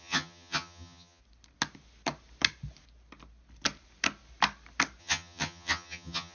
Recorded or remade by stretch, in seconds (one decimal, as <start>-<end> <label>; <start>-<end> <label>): 0.0-1.2 remade; 1.2-5.0 recorded; 5.0-6.3 remade